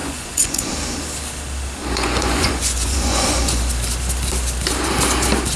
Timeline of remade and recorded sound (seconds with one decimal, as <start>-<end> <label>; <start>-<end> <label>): 0.0-0.7 remade; 0.7-1.8 recorded; 1.8-3.7 remade; 3.7-5.6 recorded

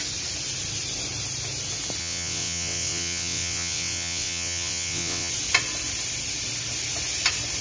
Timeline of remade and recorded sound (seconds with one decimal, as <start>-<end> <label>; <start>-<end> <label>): 0.0-2.0 recorded; 2.0-5.3 remade; 5.3-7.6 recorded

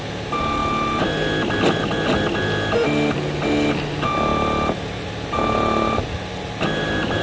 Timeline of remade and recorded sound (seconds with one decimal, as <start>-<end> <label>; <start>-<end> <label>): 0.0-7.2 recorded

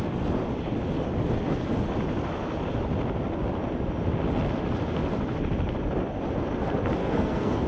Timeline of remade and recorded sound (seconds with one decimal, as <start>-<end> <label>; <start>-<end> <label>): 0.0-7.0 recorded; 7.0-7.7 remade

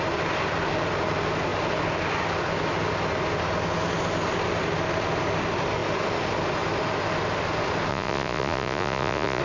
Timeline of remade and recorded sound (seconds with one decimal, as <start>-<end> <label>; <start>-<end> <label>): 0.0-7.9 recorded; 7.9-9.4 remade

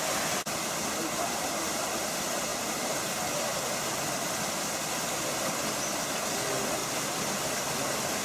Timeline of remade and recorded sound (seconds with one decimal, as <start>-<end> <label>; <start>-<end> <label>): 0.0-6.8 recorded; 6.8-7.4 remade; 7.4-8.2 recorded